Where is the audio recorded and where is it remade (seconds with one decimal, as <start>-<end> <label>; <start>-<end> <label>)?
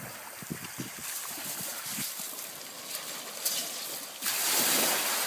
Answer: 0.0-1.7 recorded; 1.7-2.6 remade; 2.6-3.6 recorded; 3.6-4.6 remade; 4.6-5.3 recorded